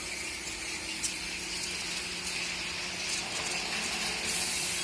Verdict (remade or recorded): recorded